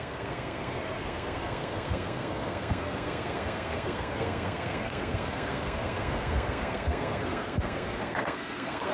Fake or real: fake